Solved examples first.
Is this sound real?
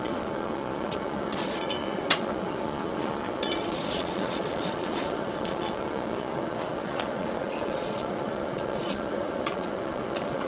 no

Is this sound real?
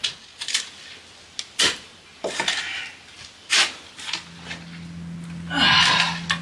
yes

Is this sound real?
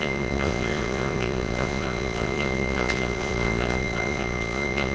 no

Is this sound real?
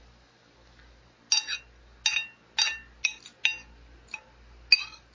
yes